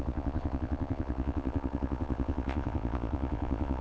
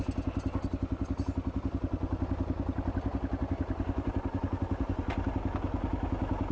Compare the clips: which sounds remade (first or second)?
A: first